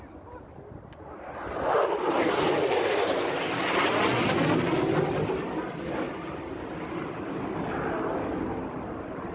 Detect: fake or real real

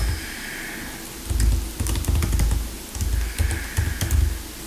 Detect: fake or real real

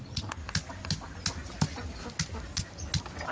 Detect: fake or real real